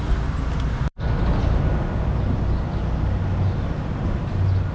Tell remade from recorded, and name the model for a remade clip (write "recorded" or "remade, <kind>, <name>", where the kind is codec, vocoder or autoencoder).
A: recorded